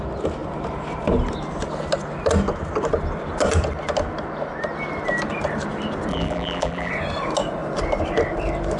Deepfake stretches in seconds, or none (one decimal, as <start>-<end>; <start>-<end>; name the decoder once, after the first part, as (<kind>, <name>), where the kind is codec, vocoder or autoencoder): 6.1-6.9 (vocoder, BigVGAN v2)